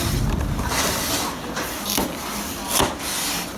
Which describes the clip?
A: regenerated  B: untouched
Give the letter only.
B